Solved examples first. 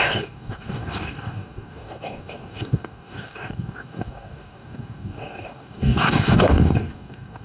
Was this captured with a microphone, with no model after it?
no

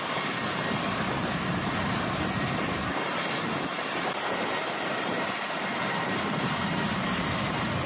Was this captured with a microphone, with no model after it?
no